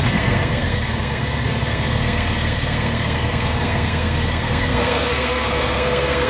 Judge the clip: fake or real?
fake